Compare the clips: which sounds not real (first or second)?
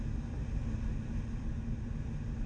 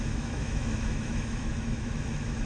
second